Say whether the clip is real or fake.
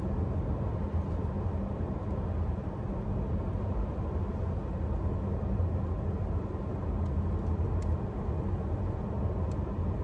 real